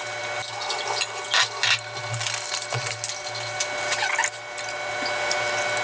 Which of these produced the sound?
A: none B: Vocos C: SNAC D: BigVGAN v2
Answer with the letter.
A